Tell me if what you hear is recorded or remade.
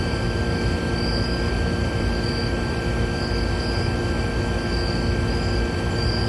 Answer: recorded